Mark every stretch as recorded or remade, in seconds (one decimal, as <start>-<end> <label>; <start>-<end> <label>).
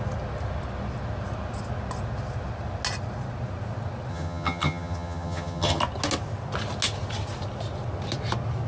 0.0-4.1 recorded; 4.1-5.8 remade; 5.8-8.7 recorded